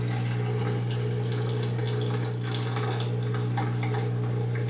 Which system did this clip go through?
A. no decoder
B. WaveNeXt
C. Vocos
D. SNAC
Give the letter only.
A